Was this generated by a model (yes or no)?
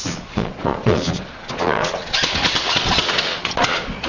yes